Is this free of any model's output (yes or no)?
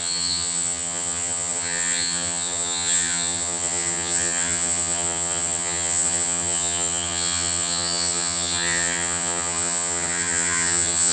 no